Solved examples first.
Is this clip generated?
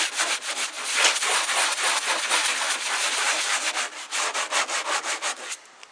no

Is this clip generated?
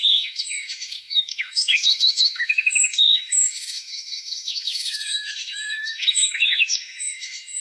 yes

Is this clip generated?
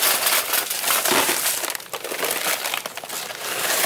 no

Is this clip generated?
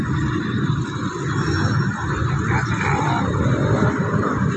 no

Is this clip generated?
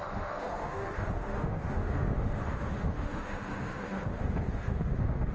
yes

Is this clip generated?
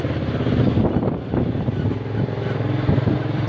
no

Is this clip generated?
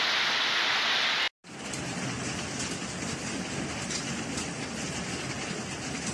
no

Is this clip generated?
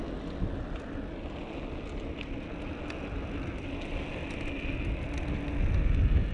no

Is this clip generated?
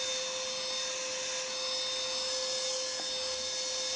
no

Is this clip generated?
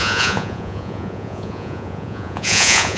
yes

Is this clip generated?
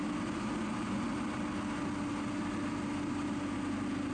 no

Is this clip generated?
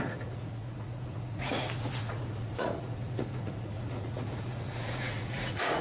yes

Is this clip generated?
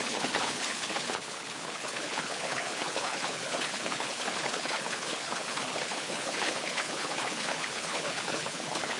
yes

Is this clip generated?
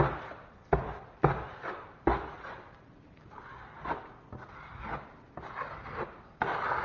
no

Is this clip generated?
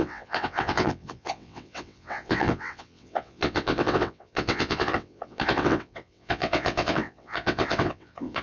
yes